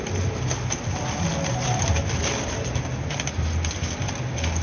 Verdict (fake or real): real